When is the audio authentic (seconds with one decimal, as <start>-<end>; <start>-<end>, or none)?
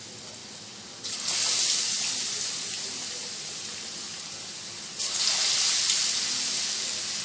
0.0-7.2